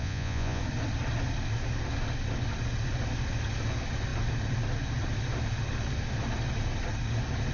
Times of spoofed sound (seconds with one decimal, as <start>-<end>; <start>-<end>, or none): 0.0-0.6